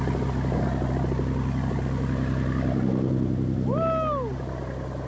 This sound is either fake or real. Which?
real